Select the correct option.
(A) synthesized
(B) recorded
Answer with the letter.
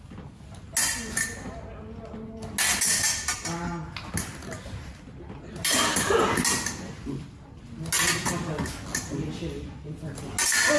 B